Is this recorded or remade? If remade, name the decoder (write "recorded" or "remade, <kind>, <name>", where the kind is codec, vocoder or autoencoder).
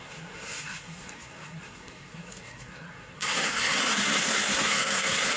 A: remade, codec, SNAC